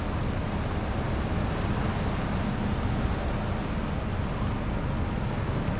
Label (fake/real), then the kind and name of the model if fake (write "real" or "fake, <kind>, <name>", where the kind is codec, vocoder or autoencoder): real